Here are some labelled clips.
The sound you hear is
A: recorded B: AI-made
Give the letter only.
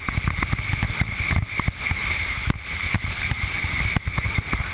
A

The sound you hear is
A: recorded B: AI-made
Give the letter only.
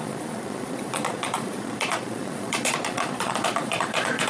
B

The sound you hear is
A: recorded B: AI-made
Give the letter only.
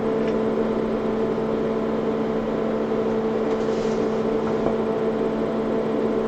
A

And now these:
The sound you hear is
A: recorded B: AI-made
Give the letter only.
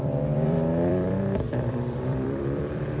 B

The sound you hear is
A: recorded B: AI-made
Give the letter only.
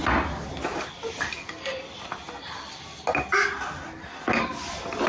A